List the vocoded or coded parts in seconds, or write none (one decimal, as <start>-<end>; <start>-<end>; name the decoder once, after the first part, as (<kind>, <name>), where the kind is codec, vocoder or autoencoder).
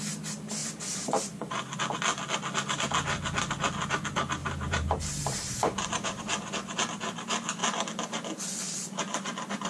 0.6-1.8 (vocoder, BigVGAN v2); 4.4-6.2